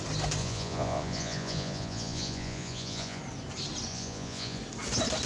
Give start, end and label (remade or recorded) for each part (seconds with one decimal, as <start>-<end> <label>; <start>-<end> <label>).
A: 0.0-0.4 recorded; 0.4-3.2 remade; 3.2-3.9 recorded; 3.9-4.6 remade; 4.6-5.3 recorded